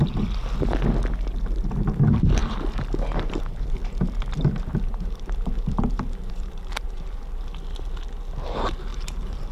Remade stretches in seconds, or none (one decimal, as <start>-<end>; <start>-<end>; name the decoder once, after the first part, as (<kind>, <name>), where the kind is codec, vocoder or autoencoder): 2.4-3.7 (vocoder, BigVGAN v2); 4.9-7.2; 8.9-9.5